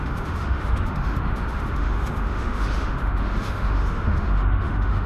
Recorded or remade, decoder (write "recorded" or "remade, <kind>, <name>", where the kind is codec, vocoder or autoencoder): remade, autoencoder, DAC-VAE